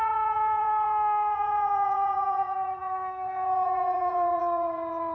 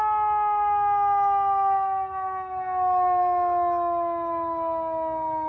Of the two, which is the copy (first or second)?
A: first